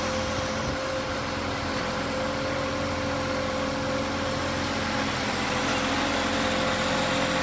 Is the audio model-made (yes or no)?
no